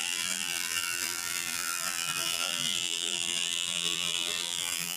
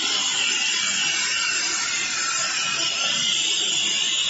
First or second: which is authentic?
second